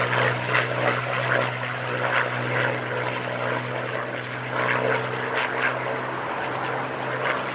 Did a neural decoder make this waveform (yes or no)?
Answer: no